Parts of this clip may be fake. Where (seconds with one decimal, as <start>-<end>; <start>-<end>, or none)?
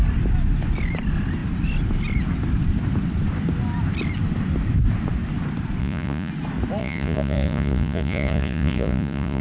5.8-6.3; 6.8-9.4